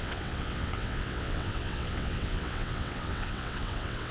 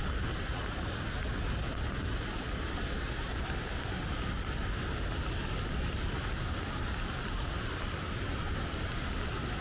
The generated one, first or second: first